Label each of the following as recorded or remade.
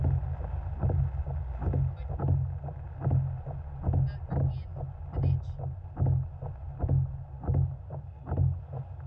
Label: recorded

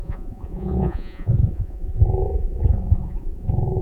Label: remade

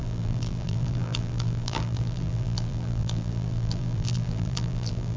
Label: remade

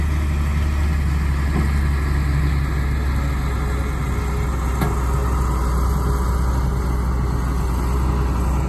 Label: recorded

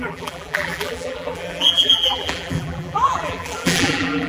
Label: remade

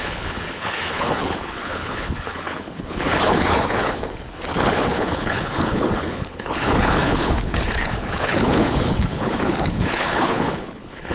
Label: remade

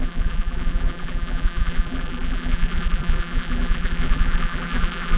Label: remade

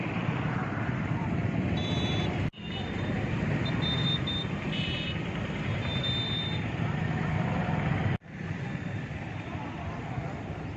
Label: remade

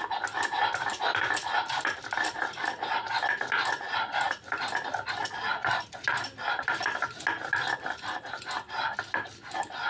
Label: recorded